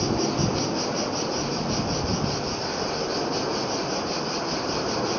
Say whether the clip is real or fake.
real